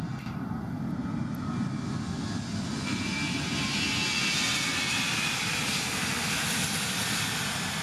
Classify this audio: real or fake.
fake